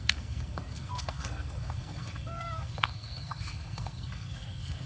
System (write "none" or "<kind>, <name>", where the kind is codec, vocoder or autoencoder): codec, SNAC